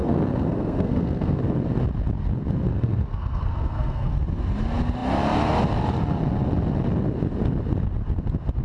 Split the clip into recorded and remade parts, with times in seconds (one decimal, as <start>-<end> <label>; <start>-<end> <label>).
0.0-1.4 remade; 1.4-2.7 recorded; 2.7-4.1 remade; 4.1-8.6 recorded